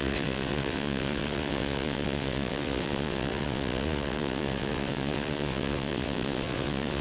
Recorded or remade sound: remade